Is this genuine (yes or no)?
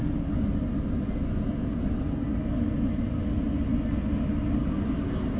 yes